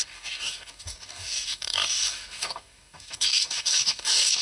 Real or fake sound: fake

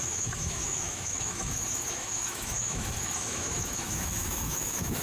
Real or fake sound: fake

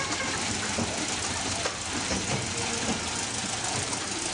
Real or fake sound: fake